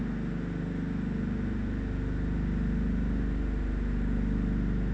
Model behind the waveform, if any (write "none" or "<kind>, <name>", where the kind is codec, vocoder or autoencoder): none